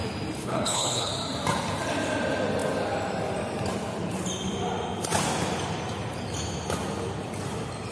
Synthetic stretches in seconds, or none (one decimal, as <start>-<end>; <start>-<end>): 0.4-1.1